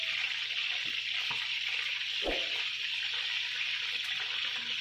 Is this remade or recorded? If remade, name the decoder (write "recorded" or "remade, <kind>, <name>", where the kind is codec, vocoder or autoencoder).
recorded